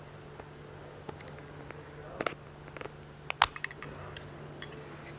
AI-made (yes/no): no